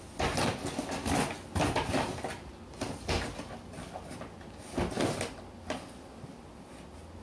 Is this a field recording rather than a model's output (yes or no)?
yes